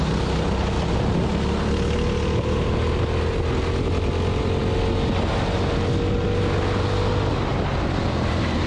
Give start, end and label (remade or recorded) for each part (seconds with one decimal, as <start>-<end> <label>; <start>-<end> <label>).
0.0-8.7 recorded

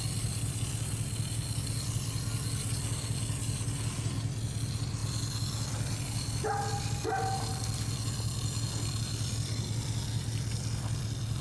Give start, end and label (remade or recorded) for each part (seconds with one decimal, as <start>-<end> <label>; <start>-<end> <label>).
0.0-11.4 recorded